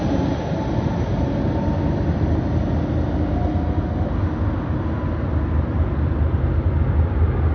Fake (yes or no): no